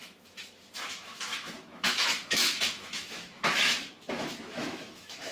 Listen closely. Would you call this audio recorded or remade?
remade